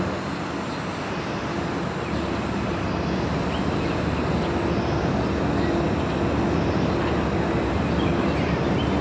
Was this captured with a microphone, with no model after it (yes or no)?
yes